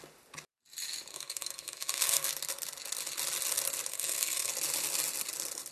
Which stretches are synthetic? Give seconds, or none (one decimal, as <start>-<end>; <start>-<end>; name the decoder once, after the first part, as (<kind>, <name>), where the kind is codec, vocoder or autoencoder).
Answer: 1.1-2.3 (codec, SNAC); 3.9-4.5